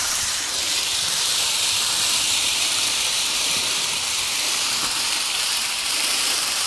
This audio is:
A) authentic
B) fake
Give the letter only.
B